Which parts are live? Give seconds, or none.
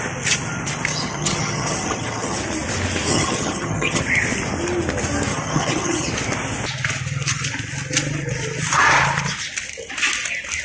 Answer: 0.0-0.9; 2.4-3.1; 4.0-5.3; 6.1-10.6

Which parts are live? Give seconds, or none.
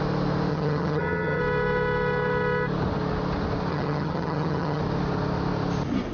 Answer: 0.0-0.5; 1.4-3.7; 4.8-6.1